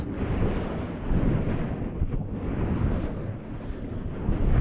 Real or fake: real